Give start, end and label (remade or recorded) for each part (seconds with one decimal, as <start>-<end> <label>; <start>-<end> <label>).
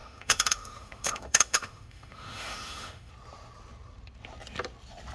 0.0-3.1 remade; 3.1-5.1 recorded